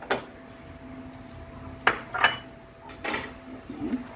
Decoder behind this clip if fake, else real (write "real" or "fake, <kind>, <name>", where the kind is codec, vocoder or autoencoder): real